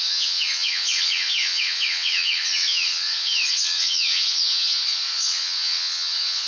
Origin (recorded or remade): remade